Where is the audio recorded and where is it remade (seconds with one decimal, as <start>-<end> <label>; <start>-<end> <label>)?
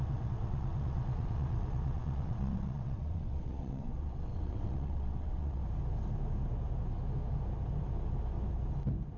0.0-5.6 remade; 5.6-9.2 recorded